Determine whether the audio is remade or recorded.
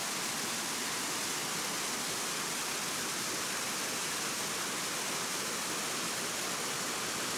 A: recorded